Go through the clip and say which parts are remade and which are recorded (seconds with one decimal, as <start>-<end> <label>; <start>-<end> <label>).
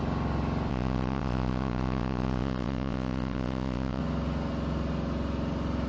0.0-0.7 recorded; 0.7-4.0 remade; 4.0-5.9 recorded